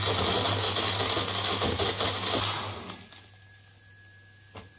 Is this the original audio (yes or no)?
yes